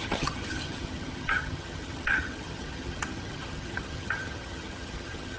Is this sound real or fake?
fake